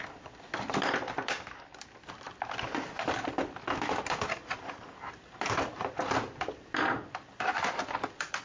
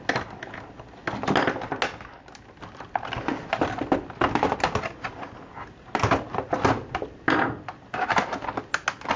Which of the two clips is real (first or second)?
second